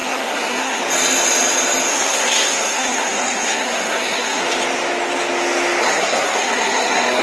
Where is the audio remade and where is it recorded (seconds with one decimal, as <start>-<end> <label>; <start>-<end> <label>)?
0.0-0.8 remade; 0.8-1.9 recorded; 1.9-4.4 remade; 4.4-5.8 recorded; 5.8-7.2 remade